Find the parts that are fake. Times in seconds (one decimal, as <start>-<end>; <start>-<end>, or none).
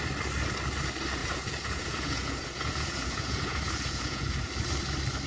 1.2-4.4